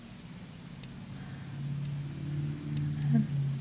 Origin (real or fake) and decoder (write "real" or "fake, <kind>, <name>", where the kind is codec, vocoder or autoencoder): real